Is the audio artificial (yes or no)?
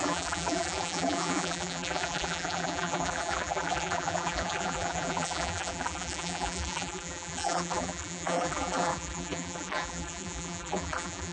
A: yes